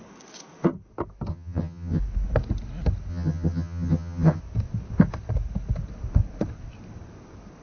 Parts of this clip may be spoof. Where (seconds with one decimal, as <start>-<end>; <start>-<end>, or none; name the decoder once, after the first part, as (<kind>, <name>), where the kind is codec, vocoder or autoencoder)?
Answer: 1.3-2.0 (vocoder, HiFi-GAN); 3.1-4.4